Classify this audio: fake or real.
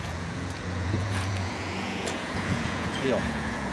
fake